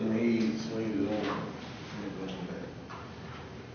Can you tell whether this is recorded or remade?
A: recorded